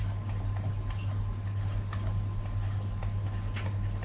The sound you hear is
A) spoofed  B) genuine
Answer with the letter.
B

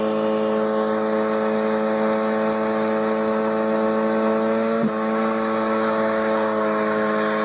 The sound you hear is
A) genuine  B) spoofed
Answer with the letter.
A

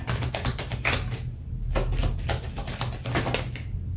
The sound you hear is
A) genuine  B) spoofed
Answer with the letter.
A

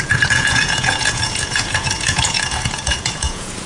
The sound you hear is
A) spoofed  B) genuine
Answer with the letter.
A